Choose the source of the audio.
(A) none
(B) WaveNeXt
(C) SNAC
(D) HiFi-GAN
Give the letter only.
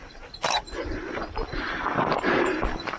A